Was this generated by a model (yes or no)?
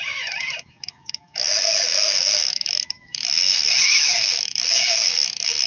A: yes